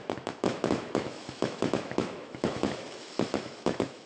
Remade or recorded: remade